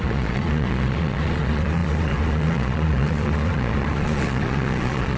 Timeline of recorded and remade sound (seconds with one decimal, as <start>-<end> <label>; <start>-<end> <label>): 0.0-5.2 remade